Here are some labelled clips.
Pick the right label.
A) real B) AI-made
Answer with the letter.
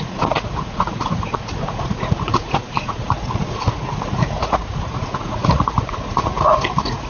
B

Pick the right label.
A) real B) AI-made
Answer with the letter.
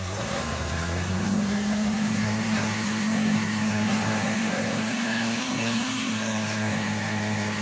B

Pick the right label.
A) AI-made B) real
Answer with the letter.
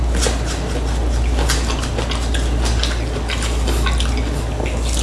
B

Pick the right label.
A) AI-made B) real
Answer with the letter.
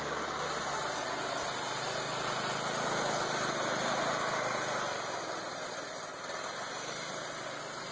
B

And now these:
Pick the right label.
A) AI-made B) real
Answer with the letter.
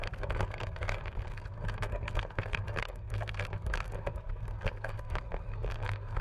A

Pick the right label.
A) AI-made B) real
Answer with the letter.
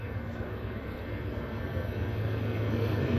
A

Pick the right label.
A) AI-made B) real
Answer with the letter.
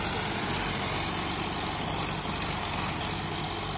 B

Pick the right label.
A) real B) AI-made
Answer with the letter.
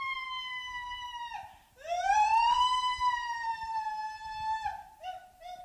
B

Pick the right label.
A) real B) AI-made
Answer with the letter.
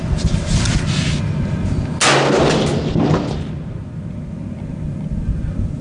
A